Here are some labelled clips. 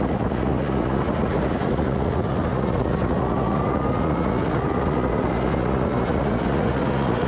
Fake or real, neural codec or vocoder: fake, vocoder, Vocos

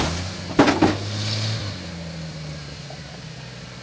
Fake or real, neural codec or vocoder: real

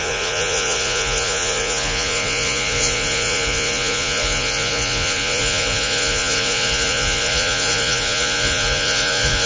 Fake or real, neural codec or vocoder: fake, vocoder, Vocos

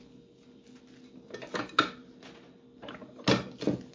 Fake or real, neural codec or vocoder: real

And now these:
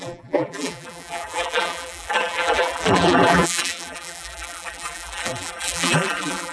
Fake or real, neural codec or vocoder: fake, vocoder, BigVGAN v2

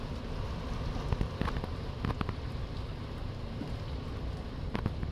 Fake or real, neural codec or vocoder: real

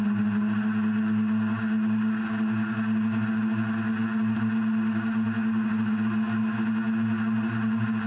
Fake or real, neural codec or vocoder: real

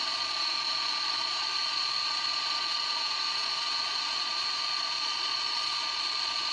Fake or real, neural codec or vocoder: fake, vocoder, Vocos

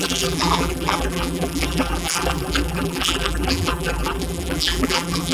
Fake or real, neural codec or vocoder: fake, vocoder, BigVGAN v2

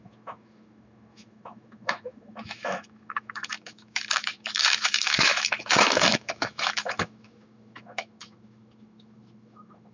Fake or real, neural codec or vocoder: fake, autoencoder, DAC-VAE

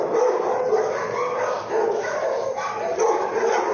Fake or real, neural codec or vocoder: fake, vocoder, BigVGAN v2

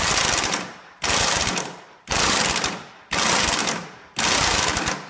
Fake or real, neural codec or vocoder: real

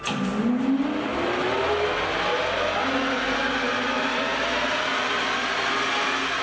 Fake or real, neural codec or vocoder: real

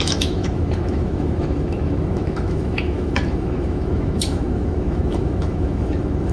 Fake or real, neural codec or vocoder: fake, autoencoder, DAC-VAE